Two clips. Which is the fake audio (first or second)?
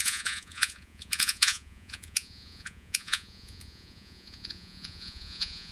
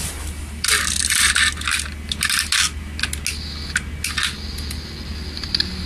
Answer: first